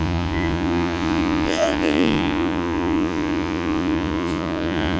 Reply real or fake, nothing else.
fake